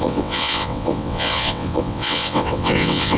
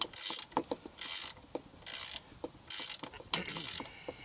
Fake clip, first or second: first